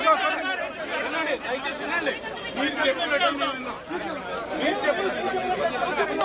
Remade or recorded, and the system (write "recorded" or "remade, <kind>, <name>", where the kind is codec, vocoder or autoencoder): recorded